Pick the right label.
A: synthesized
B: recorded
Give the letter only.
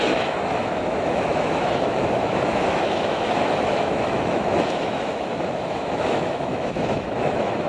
A